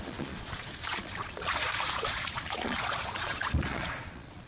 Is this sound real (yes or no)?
no